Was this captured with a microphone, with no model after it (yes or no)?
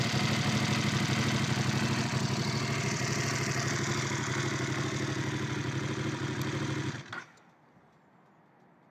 yes